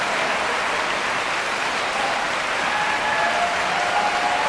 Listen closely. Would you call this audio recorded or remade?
recorded